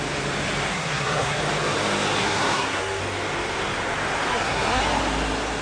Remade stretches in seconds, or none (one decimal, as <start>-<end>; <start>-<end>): 0.7-1.4; 2.2-3.0; 4.3-4.8